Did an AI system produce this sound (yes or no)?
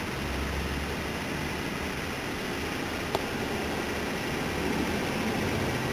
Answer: no